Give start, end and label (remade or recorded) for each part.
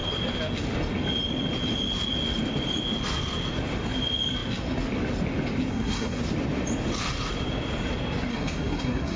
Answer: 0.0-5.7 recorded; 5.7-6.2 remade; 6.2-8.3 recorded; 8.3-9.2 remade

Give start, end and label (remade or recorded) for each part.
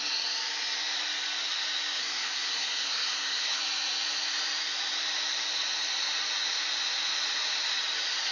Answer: 0.0-2.0 recorded; 2.0-3.6 remade; 3.6-8.3 recorded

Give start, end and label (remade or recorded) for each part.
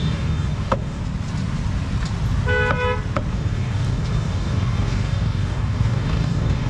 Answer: 0.0-1.0 remade; 1.0-3.3 recorded; 3.3-6.7 remade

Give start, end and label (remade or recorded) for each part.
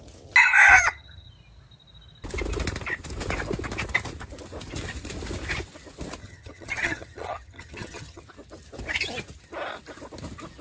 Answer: 0.0-0.7 recorded; 0.7-1.3 remade; 1.3-6.2 recorded; 6.2-8.2 remade; 8.2-10.6 recorded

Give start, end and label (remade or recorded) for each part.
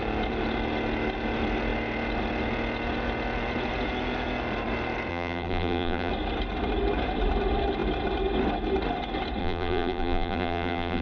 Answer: 0.0-5.1 recorded; 5.1-6.1 remade; 6.1-9.4 recorded; 9.4-11.0 remade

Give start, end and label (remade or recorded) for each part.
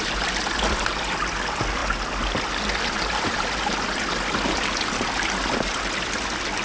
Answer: 0.0-6.6 recorded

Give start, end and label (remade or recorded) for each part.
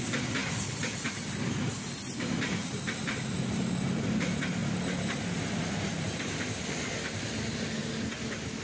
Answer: 0.0-8.6 recorded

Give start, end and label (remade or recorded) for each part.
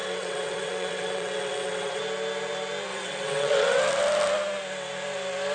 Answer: 0.0-2.0 remade; 2.0-2.9 recorded; 2.9-3.8 remade; 3.8-5.5 recorded